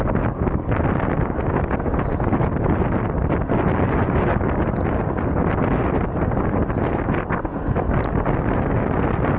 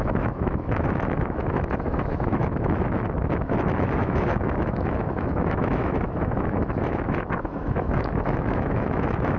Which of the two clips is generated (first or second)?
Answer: second